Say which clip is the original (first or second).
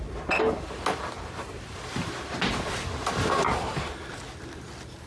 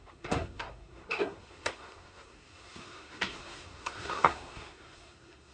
first